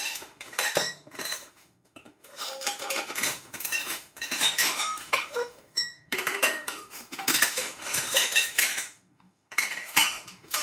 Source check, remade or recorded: remade